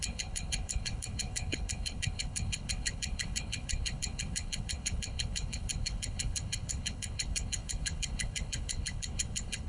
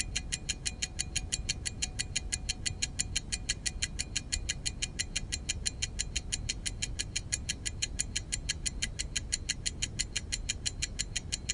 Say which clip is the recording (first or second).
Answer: second